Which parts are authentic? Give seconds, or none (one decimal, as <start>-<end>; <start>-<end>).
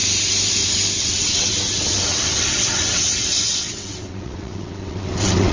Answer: 0.0-1.0